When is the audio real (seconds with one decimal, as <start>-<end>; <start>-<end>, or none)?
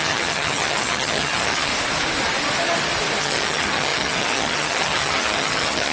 1.7-3.2